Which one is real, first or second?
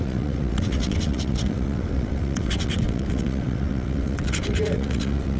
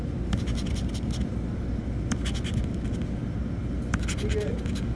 second